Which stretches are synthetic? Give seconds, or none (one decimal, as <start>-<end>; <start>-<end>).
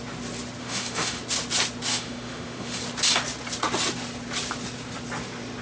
0.6-1.2; 1.9-2.8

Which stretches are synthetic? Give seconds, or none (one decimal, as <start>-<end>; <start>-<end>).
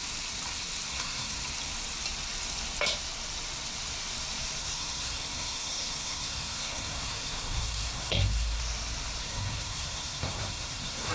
0.9-1.4; 4.6-8.6; 9.2-11.1